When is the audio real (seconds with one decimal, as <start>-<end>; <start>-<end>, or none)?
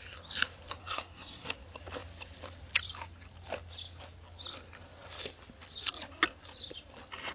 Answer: 0.0-0.8; 1.5-7.3